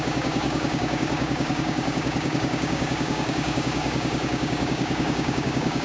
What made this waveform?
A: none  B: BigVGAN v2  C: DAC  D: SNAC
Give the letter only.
C